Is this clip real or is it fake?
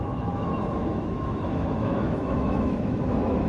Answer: fake